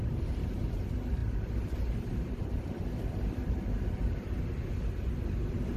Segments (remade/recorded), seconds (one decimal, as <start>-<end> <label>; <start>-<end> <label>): 0.0-5.8 recorded